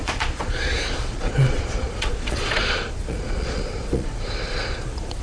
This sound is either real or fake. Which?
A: fake